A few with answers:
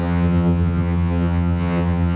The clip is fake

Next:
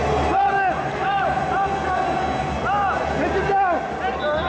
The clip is real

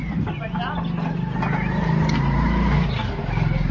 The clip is real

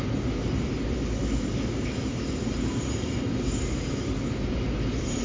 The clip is real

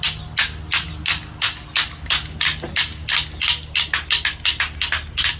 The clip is real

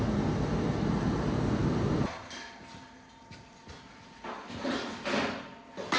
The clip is real